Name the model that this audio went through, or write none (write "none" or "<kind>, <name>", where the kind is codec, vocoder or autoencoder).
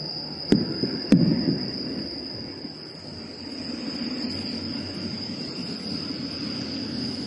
none